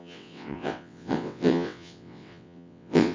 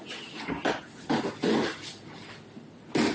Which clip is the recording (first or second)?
second